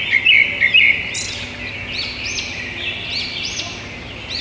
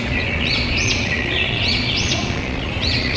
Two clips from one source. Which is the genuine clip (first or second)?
first